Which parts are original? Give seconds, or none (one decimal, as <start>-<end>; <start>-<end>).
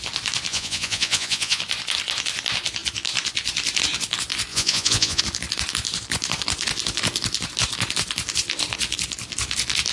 0.0-0.5; 1.6-4.5; 5.2-9.9